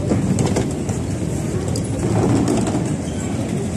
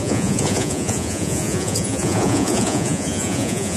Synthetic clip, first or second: second